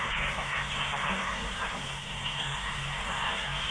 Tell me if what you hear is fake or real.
fake